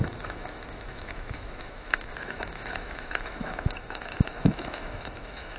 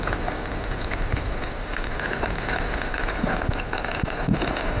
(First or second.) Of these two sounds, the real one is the second